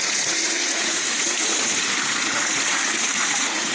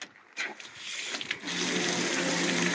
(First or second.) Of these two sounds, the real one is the second